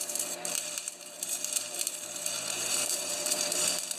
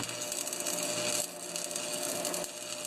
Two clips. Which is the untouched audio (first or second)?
second